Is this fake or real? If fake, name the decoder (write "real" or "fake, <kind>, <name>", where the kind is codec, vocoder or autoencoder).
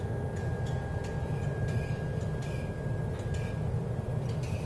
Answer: real